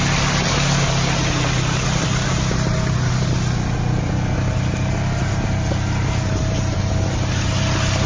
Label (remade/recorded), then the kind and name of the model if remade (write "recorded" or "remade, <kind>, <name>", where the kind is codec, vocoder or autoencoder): recorded